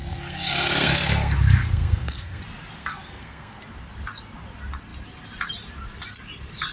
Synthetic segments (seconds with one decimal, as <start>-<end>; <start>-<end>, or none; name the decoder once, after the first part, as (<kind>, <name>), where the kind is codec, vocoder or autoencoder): 0.0-2.4 (codec, SNAC); 2.8-3.6